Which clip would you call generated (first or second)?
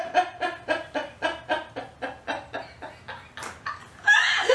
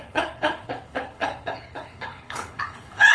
second